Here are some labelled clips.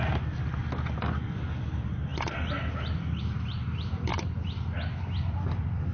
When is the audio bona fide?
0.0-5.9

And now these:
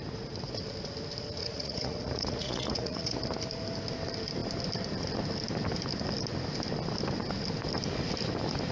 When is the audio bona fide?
0.0-1.4; 3.2-8.7

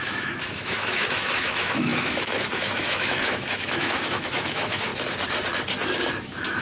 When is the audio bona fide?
4.9-6.1

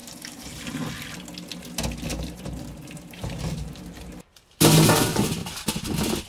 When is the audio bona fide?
0.9-2.1; 4.4-6.3